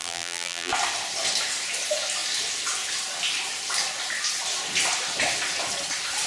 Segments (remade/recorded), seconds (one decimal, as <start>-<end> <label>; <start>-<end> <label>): 0.0-0.7 remade; 0.7-6.3 recorded